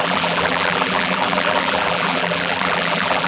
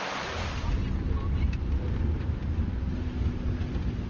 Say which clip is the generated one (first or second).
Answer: first